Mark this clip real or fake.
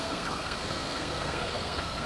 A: fake